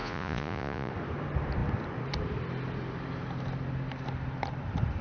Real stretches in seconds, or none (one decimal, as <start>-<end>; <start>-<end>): 0.9-5.0